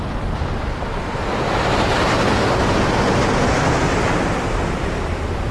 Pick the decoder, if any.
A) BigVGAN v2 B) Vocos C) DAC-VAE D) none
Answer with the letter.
D